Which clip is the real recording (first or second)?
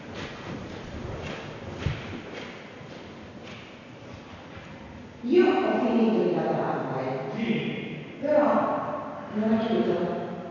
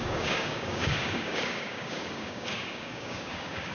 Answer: first